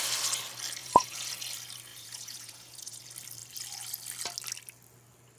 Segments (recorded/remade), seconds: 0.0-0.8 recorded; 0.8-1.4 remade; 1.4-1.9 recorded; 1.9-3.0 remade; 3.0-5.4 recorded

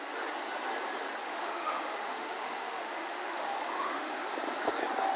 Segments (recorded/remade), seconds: 0.0-1.2 recorded; 1.2-4.3 remade; 4.3-5.2 recorded